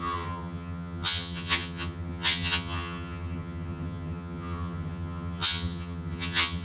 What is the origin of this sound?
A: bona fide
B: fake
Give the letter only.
B